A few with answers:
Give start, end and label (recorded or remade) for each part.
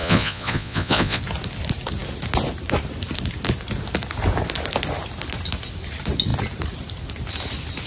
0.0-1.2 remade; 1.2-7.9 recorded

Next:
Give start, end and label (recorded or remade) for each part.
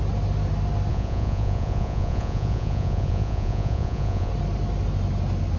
0.0-0.9 recorded; 0.9-4.3 remade; 4.3-5.6 recorded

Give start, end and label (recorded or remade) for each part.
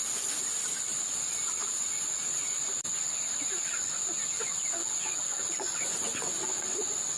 0.0-4.8 recorded; 4.8-7.2 remade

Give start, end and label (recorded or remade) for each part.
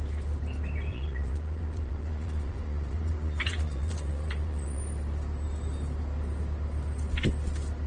0.0-0.9 recorded; 0.9-4.8 remade; 4.8-7.9 recorded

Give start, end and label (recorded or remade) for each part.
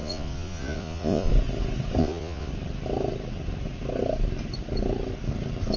0.0-1.3 remade; 1.3-2.0 recorded; 2.0-2.5 remade; 2.5-5.8 recorded